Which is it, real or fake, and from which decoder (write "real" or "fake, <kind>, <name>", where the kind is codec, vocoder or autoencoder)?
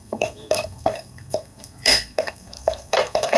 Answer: fake, codec, SNAC